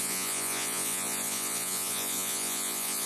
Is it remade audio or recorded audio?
remade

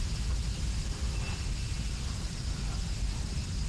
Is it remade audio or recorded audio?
recorded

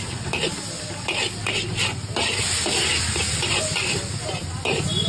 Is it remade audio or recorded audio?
recorded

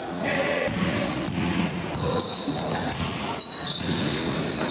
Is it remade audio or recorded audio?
remade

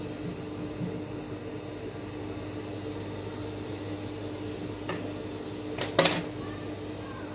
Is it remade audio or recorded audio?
recorded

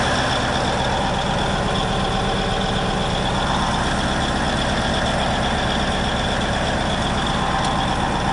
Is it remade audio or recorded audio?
recorded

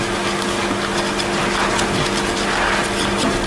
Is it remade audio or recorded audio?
recorded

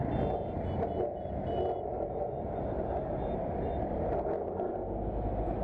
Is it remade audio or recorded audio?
recorded